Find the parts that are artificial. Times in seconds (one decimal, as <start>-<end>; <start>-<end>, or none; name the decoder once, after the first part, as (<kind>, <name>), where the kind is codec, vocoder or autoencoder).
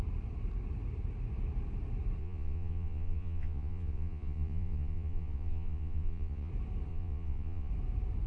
2.2-6.5 (vocoder, Vocos); 6.9-7.7